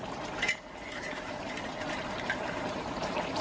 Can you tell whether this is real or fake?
fake